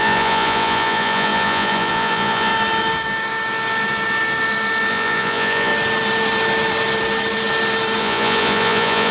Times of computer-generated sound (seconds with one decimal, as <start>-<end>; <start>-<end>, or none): 0.0-2.5; 4.9-5.7; 8.0-9.1